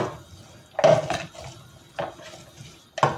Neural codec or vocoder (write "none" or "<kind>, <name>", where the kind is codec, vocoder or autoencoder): none